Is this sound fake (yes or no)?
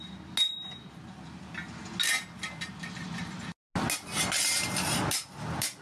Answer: no